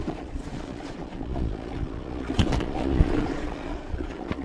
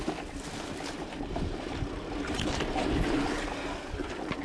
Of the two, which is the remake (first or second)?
first